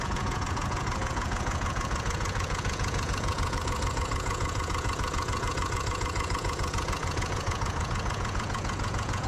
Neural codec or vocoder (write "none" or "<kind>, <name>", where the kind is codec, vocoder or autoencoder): vocoder, Vocos